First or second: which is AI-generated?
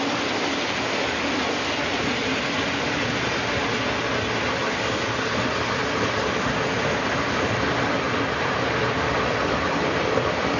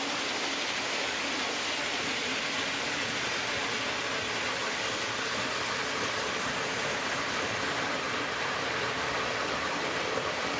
second